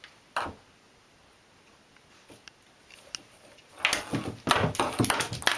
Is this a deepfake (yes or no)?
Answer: no